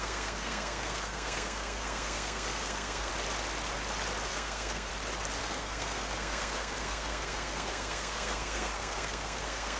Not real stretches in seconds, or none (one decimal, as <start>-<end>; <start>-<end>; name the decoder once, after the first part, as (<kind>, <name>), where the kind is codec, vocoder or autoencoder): 0.0-3.1 (codec, SNAC); 4.3-4.9; 5.4-9.8